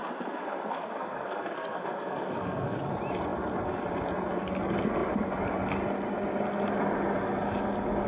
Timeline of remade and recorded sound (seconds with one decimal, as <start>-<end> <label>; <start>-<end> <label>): 0.0-0.4 recorded; 0.4-2.8 remade; 2.8-8.1 recorded